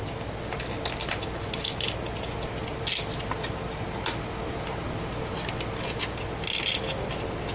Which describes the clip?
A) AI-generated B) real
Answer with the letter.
B